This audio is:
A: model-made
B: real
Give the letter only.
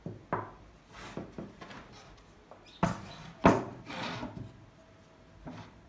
B